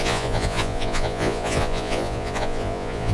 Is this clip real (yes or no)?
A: no